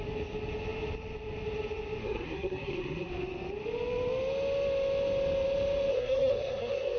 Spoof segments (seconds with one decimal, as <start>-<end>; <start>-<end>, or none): 2.0-3.1; 5.9-7.0